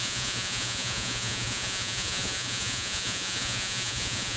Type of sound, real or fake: fake